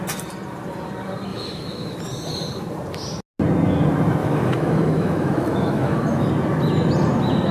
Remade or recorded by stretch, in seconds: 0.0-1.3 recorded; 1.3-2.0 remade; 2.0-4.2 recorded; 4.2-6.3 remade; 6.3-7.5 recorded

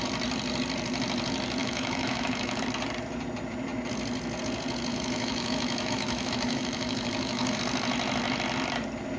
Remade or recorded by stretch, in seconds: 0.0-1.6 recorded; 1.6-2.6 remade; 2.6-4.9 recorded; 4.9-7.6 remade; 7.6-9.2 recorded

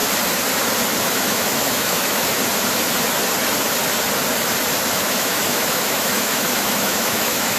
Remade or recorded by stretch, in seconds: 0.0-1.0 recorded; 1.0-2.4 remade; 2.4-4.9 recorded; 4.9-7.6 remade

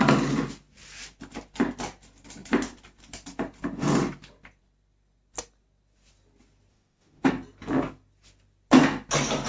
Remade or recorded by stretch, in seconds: 0.0-6.7 recorded; 6.7-7.3 remade; 7.3-9.5 recorded

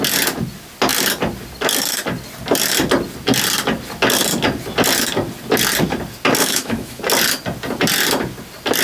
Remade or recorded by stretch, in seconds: 0.0-6.4 recorded; 6.4-7.0 remade; 7.0-8.8 recorded